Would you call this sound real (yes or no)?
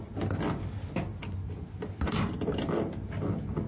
yes